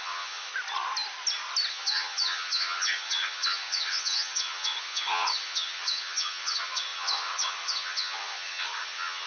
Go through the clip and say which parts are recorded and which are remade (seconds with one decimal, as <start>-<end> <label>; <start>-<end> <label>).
0.0-0.5 remade; 0.5-1.7 recorded; 1.7-9.3 remade